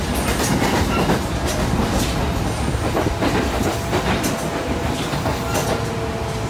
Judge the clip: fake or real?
real